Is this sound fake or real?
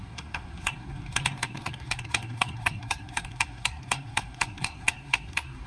fake